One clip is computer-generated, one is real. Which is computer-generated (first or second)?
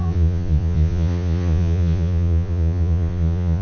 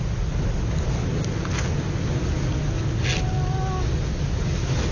first